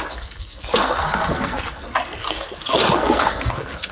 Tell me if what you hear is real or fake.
fake